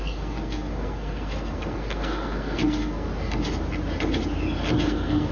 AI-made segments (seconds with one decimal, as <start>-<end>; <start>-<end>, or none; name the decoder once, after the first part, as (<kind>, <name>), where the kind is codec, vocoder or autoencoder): 0.0-3.1 (codec, SNAC); 4.8-5.3